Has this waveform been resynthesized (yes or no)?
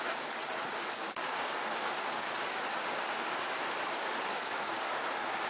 yes